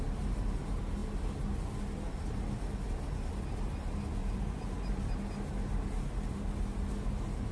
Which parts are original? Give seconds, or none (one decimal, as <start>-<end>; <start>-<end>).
0.0-4.2; 5.2-7.5